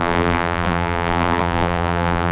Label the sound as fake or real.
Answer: fake